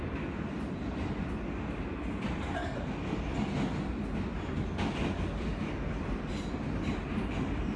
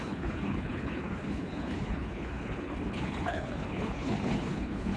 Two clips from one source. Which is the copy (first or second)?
second